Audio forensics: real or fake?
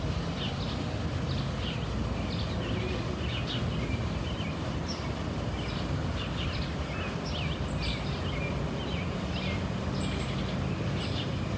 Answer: real